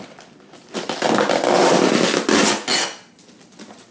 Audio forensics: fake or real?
real